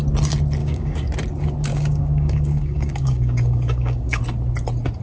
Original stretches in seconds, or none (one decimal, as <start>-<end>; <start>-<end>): 0.0-0.6; 1.1-1.7; 4.2-5.0